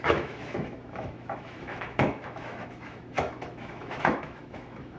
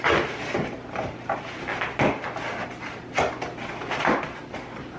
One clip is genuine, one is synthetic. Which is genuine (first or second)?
second